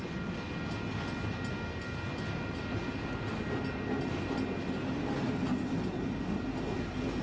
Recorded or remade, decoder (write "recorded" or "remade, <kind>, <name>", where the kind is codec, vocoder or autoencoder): recorded